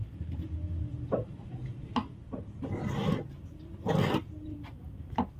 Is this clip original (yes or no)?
no